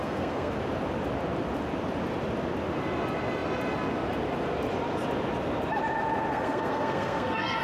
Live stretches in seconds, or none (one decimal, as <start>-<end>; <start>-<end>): 0.5-6.3